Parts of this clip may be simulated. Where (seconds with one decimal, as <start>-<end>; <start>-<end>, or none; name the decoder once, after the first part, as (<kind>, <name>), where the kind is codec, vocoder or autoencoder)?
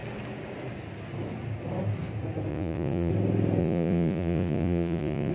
2.5-3.1 (vocoder, Vocos); 3.6-5.3